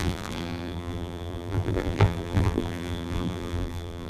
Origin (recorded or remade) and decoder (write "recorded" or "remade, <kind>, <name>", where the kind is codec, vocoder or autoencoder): remade, vocoder, BigVGAN v2